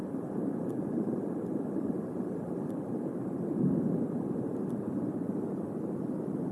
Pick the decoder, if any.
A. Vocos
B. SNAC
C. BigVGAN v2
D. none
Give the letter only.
D